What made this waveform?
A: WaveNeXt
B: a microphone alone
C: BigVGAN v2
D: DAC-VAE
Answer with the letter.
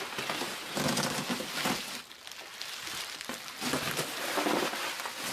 B